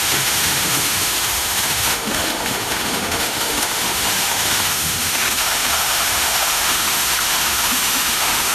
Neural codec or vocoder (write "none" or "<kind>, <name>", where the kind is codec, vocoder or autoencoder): autoencoder, DAC-VAE